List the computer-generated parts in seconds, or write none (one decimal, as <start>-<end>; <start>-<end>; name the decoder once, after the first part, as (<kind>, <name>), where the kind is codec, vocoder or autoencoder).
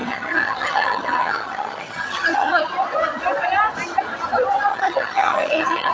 0.0-2.6 (vocoder, HiFi-GAN); 4.7-5.9